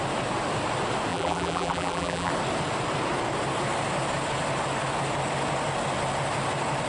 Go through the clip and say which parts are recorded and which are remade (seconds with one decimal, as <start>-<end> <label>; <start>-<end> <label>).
0.0-1.1 recorded; 1.1-2.3 remade; 2.3-6.9 recorded